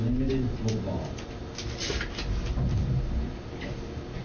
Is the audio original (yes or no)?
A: yes